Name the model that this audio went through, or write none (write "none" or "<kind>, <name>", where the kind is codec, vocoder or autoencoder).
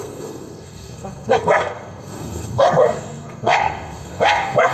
codec, SNAC